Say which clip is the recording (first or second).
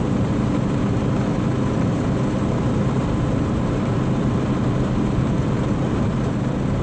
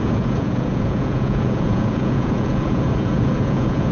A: first